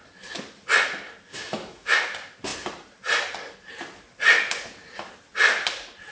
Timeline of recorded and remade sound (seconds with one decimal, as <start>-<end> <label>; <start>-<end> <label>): 0.0-1.3 recorded; 1.3-1.9 remade; 1.9-6.1 recorded